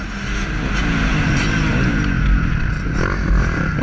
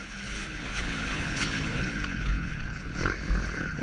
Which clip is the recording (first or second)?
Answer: first